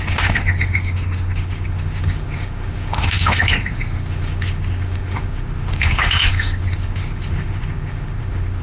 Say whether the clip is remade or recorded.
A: remade